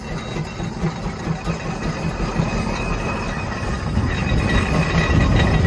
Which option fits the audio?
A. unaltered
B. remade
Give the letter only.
A